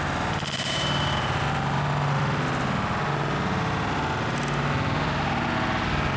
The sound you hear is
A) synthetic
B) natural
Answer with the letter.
B